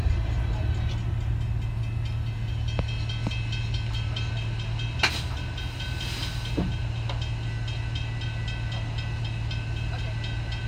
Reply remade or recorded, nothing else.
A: recorded